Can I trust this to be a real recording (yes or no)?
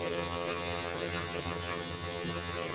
no